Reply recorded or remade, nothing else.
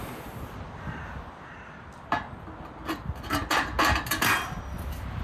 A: recorded